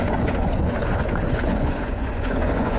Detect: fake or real fake